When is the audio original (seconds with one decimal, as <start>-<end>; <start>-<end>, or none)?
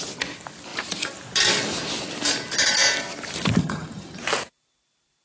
0.0-3.6; 4.2-5.2